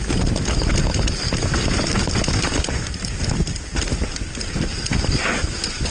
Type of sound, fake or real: real